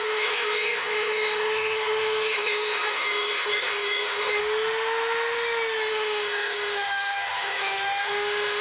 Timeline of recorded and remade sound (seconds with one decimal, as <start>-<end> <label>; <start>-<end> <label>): 0.0-4.4 remade; 4.4-5.9 recorded; 5.9-8.6 remade